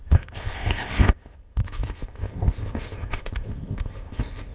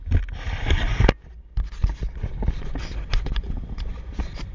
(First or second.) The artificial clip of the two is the first